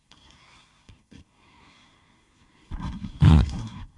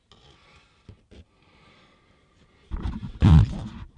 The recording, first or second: second